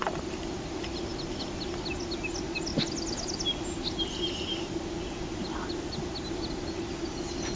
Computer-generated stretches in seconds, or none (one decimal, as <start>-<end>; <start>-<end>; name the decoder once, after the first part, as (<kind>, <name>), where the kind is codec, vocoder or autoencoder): none